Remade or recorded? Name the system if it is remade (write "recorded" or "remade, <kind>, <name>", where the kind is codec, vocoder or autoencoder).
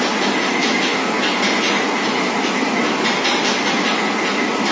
recorded